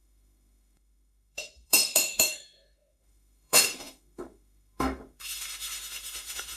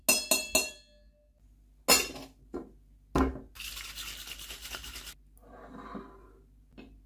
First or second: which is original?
second